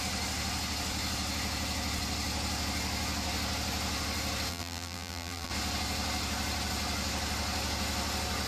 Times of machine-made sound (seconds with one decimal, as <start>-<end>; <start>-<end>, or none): 4.5-5.5